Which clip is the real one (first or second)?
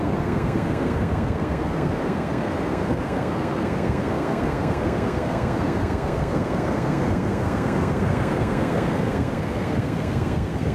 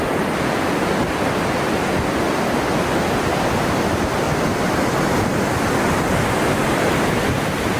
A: second